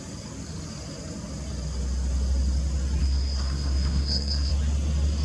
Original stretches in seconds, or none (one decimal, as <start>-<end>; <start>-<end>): 0.0-3.0; 4.5-5.2